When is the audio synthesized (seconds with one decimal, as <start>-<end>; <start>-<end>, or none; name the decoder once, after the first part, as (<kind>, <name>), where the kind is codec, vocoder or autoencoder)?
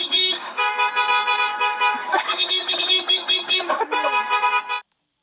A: 0.0-0.9 (codec, DAC); 1.5-4.6